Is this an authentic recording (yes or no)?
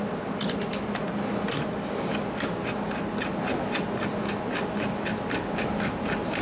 yes